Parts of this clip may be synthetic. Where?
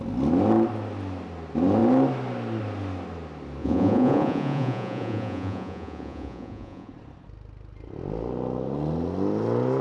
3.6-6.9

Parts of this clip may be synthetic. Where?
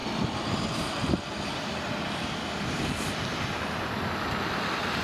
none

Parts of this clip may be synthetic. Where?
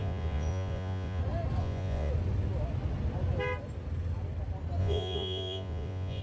0.0-1.2; 1.6-2.1; 4.8-6.2